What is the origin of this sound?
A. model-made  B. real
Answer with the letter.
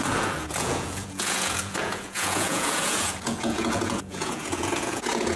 A